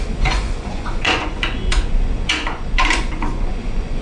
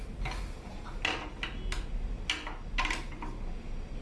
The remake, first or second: first